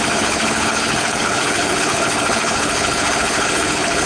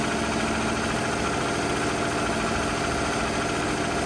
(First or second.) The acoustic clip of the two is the second